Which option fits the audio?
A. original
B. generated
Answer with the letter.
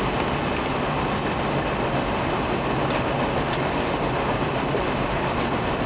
A